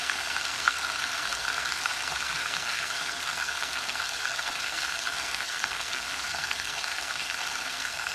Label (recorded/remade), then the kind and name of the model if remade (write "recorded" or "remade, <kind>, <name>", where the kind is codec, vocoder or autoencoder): remade, codec, SNAC